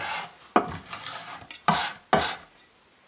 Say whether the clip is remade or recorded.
recorded